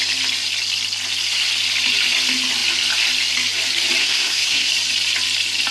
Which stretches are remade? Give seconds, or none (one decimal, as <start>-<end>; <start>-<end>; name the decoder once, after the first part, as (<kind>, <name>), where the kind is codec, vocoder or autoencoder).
4.0-4.7 (codec, SNAC)